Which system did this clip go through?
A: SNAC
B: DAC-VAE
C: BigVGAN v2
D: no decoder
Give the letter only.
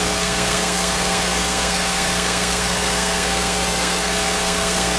A